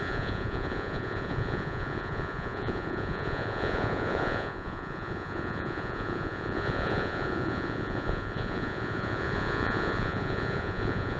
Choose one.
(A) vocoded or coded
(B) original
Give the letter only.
A